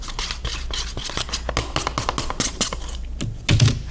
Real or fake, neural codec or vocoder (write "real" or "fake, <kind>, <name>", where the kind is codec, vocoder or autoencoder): real